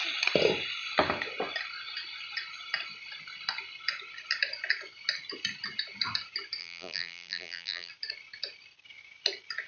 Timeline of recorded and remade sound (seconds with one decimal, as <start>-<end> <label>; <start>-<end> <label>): 0.0-6.6 recorded; 6.6-7.9 remade; 7.9-9.7 recorded